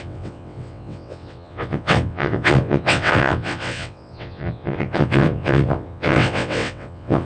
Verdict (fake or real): fake